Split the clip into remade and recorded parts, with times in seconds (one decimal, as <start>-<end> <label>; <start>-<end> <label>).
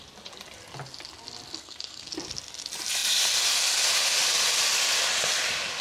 0.0-1.6 recorded; 1.6-2.1 remade; 2.1-5.8 recorded